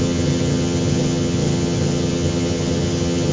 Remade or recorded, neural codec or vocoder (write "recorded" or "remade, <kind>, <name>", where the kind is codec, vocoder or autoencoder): remade, vocoder, HiFi-GAN